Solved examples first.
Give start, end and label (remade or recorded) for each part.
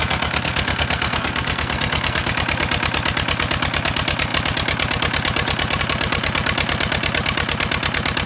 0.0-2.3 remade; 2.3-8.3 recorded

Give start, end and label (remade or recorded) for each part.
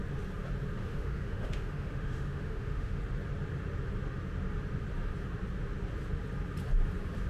0.0-0.8 recorded; 0.8-3.0 remade; 3.0-7.3 recorded